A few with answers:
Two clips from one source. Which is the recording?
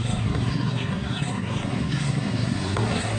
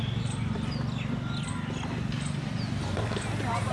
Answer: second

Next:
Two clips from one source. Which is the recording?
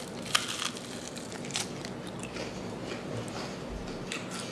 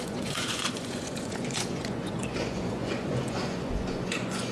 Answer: first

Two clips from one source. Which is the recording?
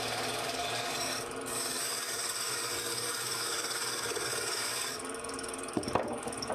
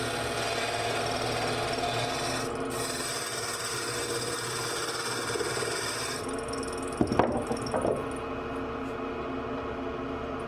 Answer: second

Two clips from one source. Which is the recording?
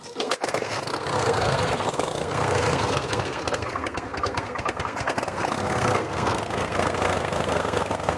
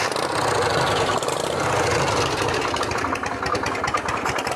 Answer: second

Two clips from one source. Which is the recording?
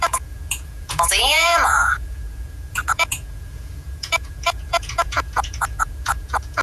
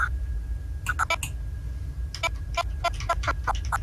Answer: second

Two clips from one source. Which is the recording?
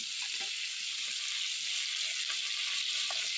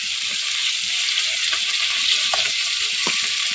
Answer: first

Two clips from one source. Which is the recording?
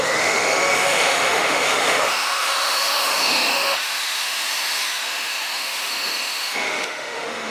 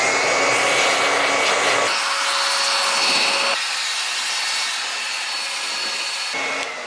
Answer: second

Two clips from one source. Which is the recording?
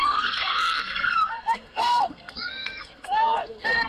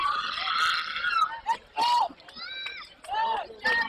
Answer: second